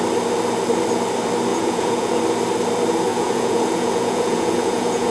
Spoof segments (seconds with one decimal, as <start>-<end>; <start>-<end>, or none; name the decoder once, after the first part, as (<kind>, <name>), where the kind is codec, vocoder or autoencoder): 1.5-2.2 (vocoder, Vocos); 3.1-5.1